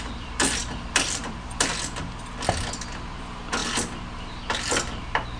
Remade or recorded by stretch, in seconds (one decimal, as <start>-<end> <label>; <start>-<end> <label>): 0.0-1.7 remade; 1.7-2.9 recorded; 2.9-5.4 remade